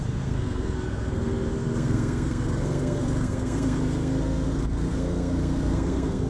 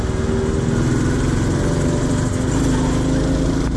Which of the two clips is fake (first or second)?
first